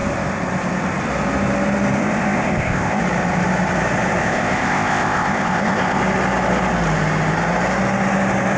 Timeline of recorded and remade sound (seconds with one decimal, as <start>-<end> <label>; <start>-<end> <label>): 0.0-2.0 recorded; 2.0-3.0 remade; 3.0-4.2 recorded; 4.2-6.0 remade; 6.0-8.6 recorded